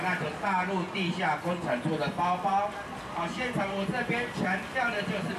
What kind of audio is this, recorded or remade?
recorded